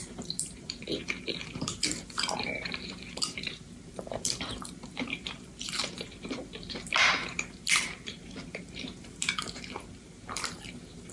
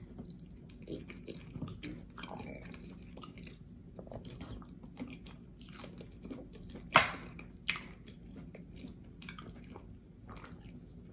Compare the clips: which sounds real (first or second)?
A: second